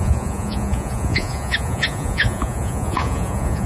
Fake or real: fake